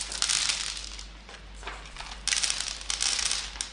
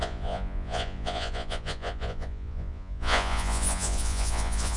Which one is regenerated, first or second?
second